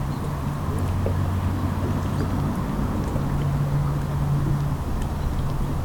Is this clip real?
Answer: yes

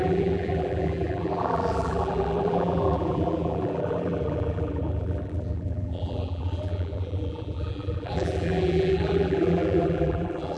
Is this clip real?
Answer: no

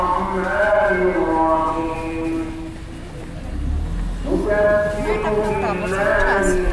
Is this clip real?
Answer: yes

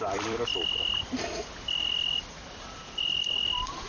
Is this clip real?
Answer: no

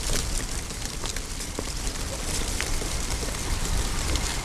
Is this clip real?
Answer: yes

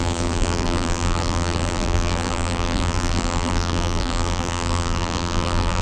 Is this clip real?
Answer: no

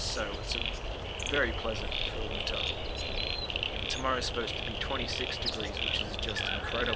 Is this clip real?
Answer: no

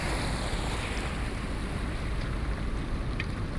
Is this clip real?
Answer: yes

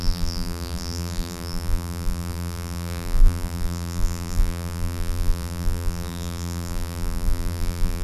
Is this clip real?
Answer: no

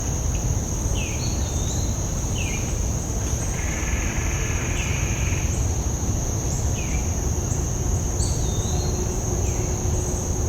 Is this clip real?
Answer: yes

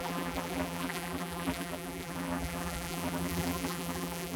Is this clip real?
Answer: no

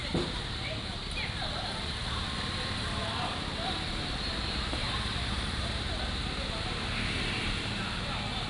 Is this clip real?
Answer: no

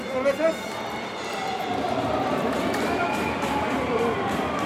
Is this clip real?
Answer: no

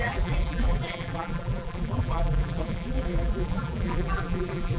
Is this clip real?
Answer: no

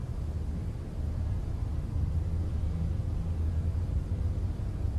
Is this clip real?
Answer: yes